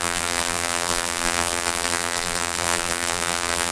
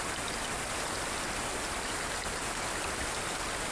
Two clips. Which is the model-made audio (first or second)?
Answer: first